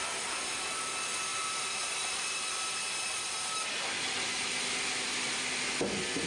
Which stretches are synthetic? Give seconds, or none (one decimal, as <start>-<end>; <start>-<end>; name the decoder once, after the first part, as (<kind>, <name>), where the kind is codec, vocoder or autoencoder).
1.3-3.3 (vocoder, BigVGAN v2)